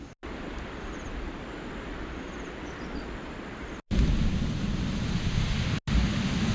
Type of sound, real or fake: real